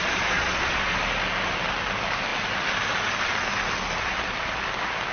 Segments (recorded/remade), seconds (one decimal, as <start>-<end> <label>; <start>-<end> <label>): 0.0-1.0 remade; 1.0-5.1 recorded